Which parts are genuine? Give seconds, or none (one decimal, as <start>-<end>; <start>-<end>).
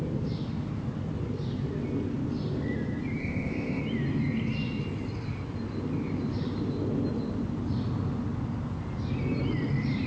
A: 0.0-3.2; 3.8-10.1